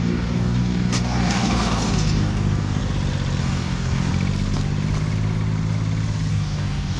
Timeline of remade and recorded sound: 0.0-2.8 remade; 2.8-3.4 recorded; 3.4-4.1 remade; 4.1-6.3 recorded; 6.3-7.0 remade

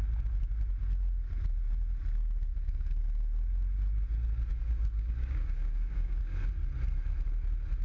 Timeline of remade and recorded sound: 0.0-2.5 recorded; 2.5-3.0 remade; 3.0-4.5 recorded; 4.5-6.2 remade; 6.2-7.8 recorded

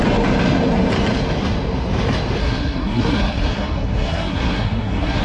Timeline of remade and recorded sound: 0.0-2.4 recorded; 2.4-5.2 remade

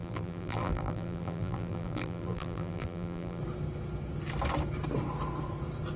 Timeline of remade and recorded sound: 0.0-3.4 remade; 3.4-6.0 recorded